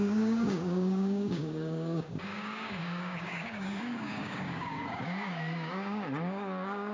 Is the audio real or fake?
fake